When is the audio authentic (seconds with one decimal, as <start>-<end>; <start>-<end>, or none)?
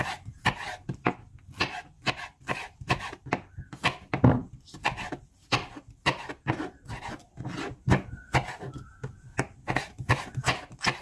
0.0-11.0